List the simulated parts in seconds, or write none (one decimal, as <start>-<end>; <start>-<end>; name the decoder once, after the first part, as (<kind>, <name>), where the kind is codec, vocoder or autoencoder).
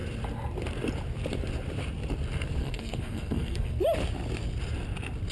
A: 2.6-3.8 (codec, SNAC)